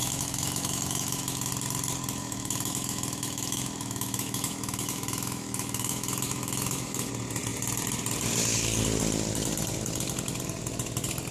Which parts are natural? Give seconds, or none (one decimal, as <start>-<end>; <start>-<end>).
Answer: 1.5-2.2; 7.1-11.3